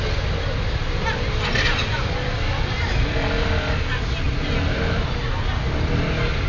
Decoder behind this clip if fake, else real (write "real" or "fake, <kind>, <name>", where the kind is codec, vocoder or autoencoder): real